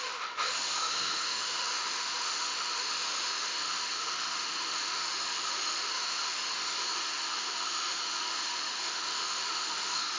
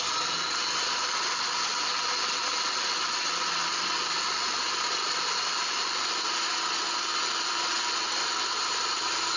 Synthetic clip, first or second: first